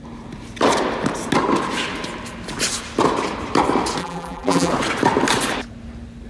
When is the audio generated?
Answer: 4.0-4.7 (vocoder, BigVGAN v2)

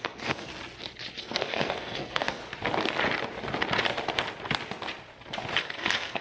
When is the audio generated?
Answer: 0.0-0.5 (codec, SNAC); 1.2-2.4; 5.6-6.2

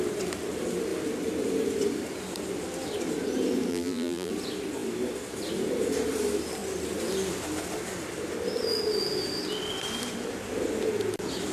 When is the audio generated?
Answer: 3.7-4.3 (vocoder, BigVGAN v2)

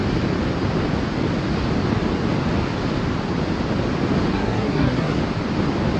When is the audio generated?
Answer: 4.3-5.2 (codec, SNAC)